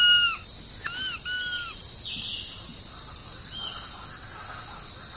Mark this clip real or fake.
real